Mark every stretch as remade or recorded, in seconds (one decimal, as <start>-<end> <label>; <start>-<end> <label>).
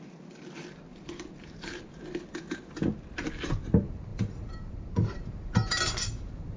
0.0-0.9 recorded; 0.9-1.8 remade; 1.8-4.1 recorded; 4.1-6.6 remade